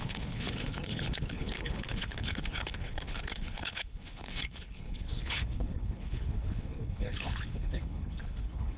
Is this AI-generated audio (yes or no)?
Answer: yes